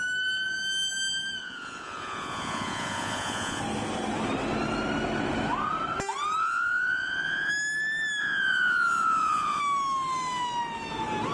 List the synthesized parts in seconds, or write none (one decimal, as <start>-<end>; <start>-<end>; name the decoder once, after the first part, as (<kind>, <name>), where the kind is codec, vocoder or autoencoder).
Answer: 1.4-3.6 (vocoder, Vocos); 6.4-7.5; 8.2-9.6